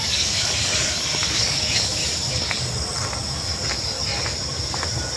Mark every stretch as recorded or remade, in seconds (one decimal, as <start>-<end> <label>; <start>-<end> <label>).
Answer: 0.0-2.0 remade; 2.0-5.2 recorded